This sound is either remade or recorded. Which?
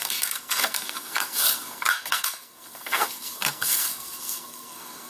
remade